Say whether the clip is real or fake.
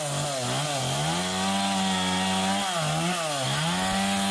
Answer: real